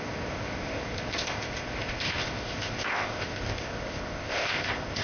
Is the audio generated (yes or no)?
yes